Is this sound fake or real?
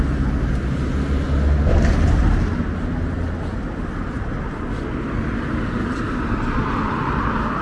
real